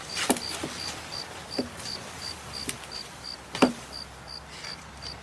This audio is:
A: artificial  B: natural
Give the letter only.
B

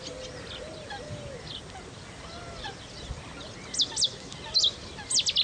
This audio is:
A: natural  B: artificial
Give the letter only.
A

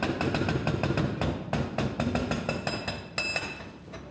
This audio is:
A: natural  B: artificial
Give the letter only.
A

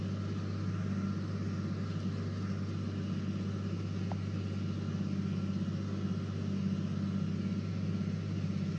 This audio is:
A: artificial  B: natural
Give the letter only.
B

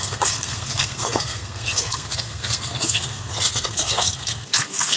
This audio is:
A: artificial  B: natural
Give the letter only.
A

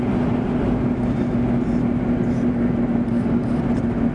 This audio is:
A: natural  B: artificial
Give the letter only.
A